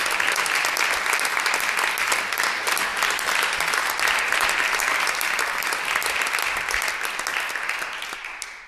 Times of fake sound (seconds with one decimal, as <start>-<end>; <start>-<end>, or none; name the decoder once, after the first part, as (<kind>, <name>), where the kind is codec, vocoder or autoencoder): none